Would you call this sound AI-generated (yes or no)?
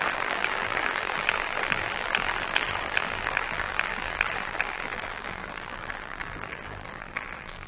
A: yes